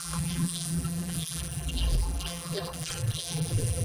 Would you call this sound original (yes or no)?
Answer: no